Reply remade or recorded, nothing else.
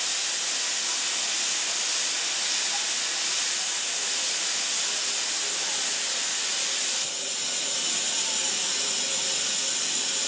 recorded